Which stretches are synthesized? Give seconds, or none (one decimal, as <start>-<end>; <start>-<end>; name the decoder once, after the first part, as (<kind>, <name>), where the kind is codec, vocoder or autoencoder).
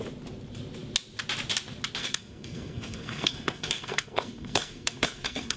2.0-5.6 (codec, SNAC)